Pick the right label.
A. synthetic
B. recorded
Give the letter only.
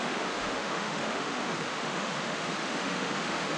A